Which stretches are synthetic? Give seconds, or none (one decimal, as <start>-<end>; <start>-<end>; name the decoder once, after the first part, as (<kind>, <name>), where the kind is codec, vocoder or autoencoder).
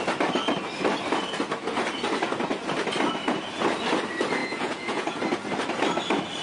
4.4-5.2 (vocoder, Vocos)